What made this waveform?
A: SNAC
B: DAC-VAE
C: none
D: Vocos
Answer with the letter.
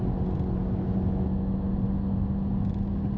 C